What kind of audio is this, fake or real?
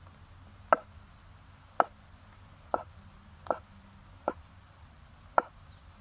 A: real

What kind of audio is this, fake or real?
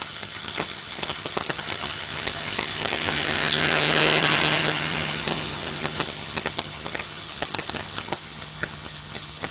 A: fake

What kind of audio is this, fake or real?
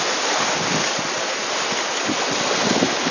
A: real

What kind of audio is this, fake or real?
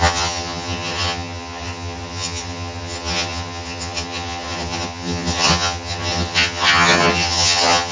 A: fake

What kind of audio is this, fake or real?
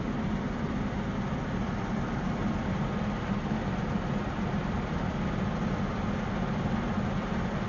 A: real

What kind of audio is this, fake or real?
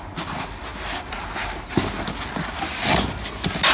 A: real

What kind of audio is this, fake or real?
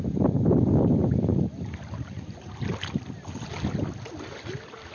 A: real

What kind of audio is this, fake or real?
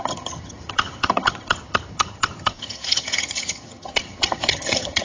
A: fake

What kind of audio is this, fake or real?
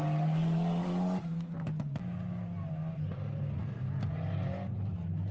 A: real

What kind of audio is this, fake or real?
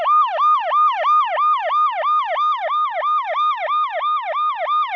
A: real